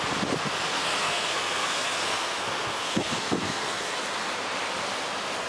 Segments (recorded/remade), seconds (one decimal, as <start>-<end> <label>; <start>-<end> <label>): 0.0-0.7 recorded; 0.7-4.0 remade; 4.0-5.5 recorded